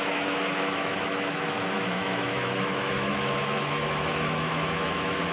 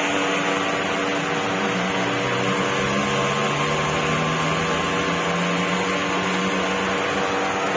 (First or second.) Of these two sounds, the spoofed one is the first